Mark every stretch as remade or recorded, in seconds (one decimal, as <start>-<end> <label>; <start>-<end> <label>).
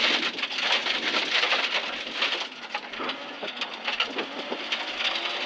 0.0-5.5 recorded